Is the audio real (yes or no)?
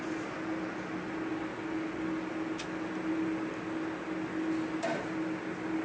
yes